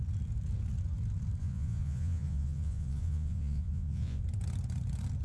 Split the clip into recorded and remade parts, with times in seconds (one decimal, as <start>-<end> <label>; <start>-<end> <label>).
0.0-1.4 recorded; 1.4-4.2 remade; 4.2-5.2 recorded